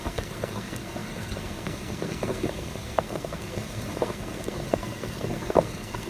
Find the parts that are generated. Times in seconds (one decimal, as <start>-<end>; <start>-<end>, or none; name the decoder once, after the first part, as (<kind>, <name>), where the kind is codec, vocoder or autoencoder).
0.0-6.1 (codec, SNAC)